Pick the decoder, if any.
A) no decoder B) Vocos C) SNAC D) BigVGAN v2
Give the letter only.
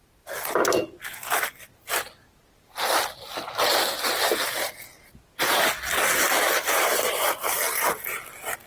A